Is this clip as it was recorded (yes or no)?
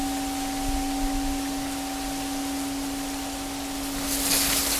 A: yes